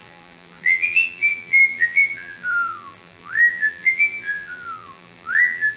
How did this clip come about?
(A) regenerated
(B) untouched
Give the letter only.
A